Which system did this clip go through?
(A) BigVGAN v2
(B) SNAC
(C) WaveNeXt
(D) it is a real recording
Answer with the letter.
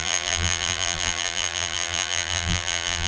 A